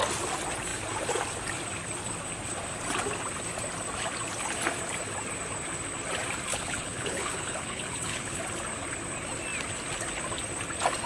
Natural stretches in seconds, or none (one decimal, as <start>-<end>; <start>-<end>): 0.0-6.5; 8.4-11.1